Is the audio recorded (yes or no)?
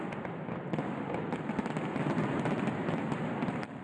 yes